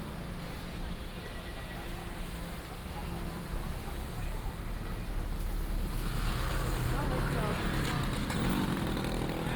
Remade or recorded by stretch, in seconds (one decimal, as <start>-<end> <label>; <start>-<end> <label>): 0.0-9.6 recorded